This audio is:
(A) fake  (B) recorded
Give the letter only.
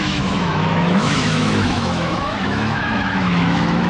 A